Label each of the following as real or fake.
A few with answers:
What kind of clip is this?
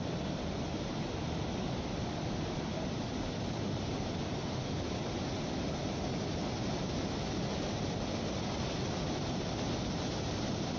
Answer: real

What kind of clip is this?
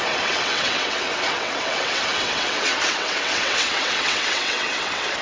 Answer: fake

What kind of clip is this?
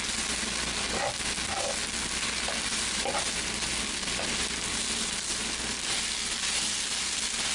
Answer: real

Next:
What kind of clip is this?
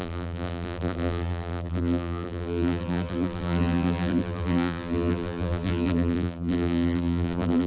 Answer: fake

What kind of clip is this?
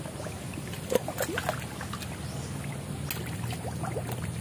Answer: real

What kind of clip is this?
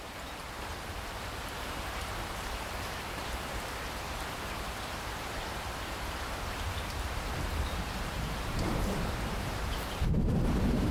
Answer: fake